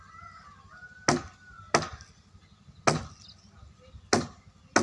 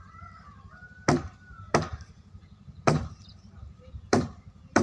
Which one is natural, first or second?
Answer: first